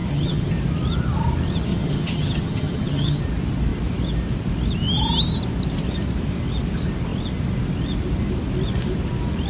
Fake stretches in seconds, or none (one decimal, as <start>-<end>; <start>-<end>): 0.0-0.5; 1.7-3.2